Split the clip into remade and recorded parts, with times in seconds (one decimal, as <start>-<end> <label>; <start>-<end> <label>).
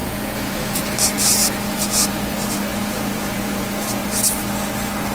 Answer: 0.0-0.8 remade; 0.8-2.7 recorded; 2.7-4.0 remade; 4.0-5.1 recorded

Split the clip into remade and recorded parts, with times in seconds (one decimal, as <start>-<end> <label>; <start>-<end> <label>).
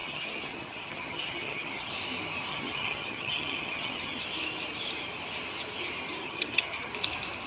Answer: 0.0-1.9 remade; 1.9-2.5 recorded; 2.5-4.2 remade; 4.2-6.2 recorded; 6.2-6.9 remade; 6.9-7.5 recorded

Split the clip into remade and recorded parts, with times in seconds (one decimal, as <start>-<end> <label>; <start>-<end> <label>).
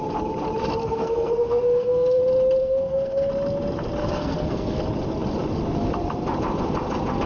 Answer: 0.0-0.8 recorded; 0.8-2.2 remade; 2.2-2.6 recorded; 2.6-3.3 remade; 3.3-4.0 recorded; 4.0-4.8 remade; 4.8-7.3 recorded